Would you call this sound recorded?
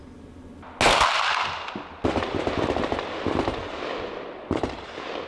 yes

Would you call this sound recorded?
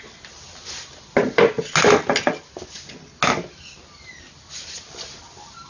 yes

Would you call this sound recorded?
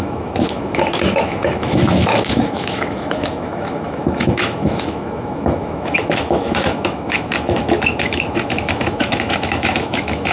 no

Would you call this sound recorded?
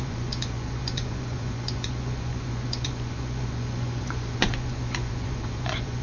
no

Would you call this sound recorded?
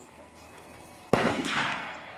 no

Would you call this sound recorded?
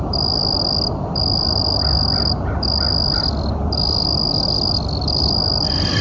yes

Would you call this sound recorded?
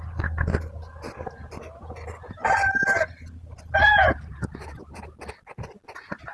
yes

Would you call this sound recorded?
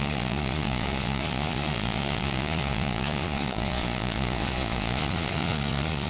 no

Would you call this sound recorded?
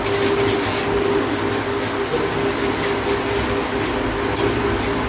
yes